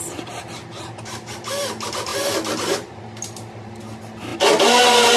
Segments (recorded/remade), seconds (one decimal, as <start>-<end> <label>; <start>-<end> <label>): 0.0-5.2 recorded

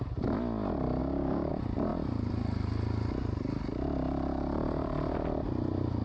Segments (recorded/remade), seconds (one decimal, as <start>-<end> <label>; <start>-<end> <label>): 0.0-1.0 recorded; 1.0-1.5 remade; 1.5-6.0 recorded